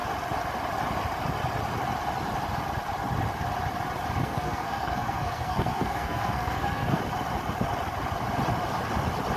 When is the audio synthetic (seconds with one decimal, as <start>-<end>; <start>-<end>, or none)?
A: 4.2-7.0